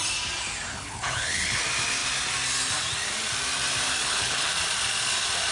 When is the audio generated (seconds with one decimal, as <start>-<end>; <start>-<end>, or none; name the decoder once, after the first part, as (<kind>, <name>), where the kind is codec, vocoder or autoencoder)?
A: 0.7-1.6 (codec, HILCodec); 4.0-4.5